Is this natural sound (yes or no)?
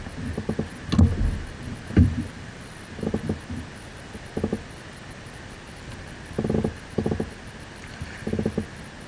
yes